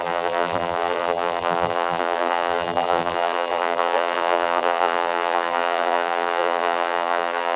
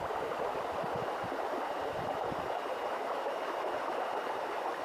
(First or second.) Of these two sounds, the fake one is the first